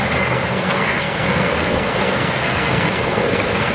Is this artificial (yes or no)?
yes